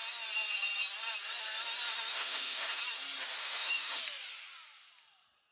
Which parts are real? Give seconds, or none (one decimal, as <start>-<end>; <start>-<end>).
0.0-2.1; 2.8-3.4; 4.0-5.5